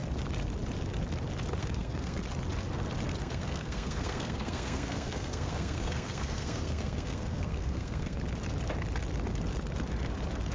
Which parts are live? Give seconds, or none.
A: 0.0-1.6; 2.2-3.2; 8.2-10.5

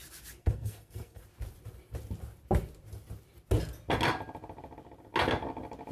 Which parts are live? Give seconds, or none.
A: 0.0-0.4; 1.2-5.9

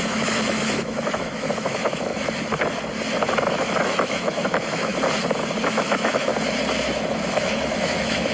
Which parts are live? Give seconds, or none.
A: 2.1-3.5; 4.9-5.7; 6.3-7.3

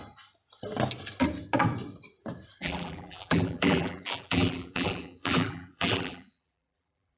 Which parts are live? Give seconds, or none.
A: 0.0-2.6